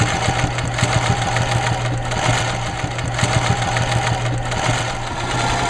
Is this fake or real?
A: real